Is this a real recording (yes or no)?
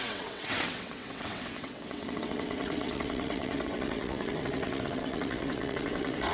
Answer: no